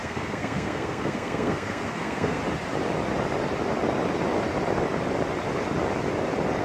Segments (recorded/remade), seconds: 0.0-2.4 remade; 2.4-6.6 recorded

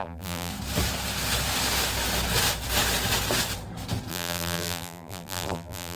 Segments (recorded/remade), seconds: 0.0-0.5 remade; 0.5-4.1 recorded; 4.1-6.0 remade